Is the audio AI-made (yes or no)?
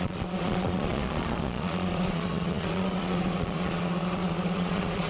yes